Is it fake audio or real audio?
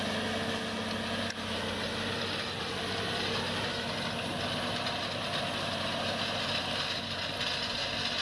real